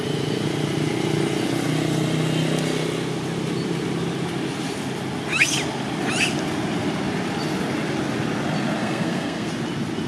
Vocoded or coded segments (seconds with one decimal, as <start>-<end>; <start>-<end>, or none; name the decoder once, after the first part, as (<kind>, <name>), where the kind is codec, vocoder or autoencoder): 8.8-9.5 (codec, SNAC)